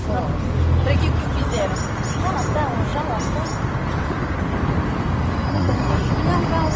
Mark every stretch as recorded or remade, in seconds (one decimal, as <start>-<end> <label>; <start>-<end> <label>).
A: 0.0-5.5 recorded; 5.5-6.1 remade; 6.1-6.8 recorded